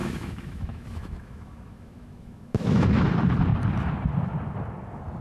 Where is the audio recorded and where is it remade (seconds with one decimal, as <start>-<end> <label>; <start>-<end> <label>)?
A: 0.0-3.1 remade; 3.1-5.2 recorded